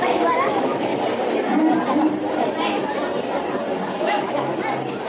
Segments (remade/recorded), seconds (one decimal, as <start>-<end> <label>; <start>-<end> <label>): 0.0-0.9 remade; 0.9-4.0 recorded; 4.0-4.5 remade; 4.5-5.1 recorded